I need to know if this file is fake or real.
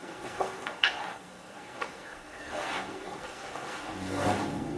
fake